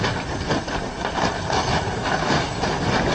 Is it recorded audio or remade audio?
recorded